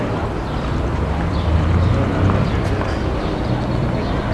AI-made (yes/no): no